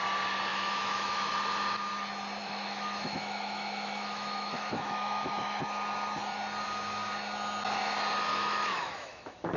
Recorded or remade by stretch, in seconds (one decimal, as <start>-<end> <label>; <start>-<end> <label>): 0.0-0.5 recorded; 0.5-1.3 remade; 1.3-2.4 recorded; 2.4-5.6 remade; 5.6-8.3 recorded; 8.3-9.6 remade